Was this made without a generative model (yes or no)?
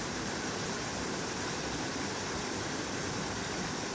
yes